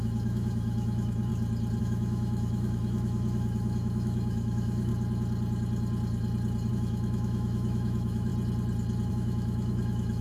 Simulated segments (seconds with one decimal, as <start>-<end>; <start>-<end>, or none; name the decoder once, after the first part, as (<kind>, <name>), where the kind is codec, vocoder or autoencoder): 0.0-1.3 (autoencoder, DAC-VAE); 1.8-4.9; 6.7-8.3; 9.1-10.2